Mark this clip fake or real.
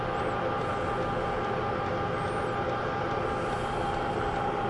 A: real